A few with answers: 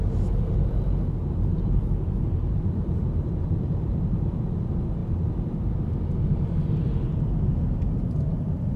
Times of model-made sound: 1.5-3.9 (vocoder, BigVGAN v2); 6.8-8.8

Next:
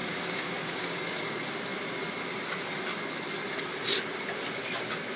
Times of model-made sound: 0.0-1.2 (codec, DAC)

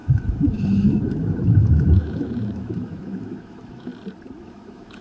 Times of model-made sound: 0.0-3.9 (autoencoder, DAC-VAE); 4.4-5.0

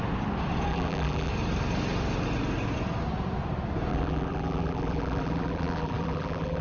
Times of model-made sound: 0.7-1.3 (vocoder, BigVGAN v2); 3.9-6.6

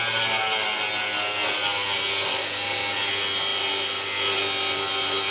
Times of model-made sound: none

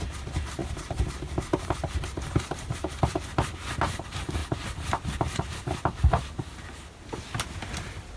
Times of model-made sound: none

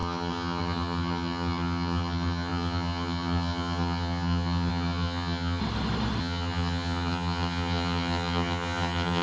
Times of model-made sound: 0.0-5.6 (vocoder, HiFi-GAN); 6.2-9.2

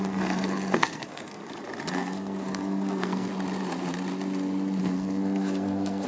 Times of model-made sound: 0.0-1.4 (codec, SNAC); 1.9-3.3; 4.8-6.1